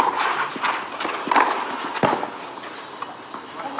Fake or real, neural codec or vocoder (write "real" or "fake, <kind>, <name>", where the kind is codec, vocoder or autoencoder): real